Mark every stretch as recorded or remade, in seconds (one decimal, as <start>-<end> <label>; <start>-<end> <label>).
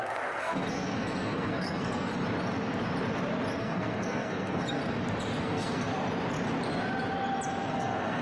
0.0-2.1 remade; 2.1-3.6 recorded; 3.6-4.8 remade; 4.8-5.4 recorded; 5.4-5.9 remade; 5.9-7.5 recorded; 7.5-8.2 remade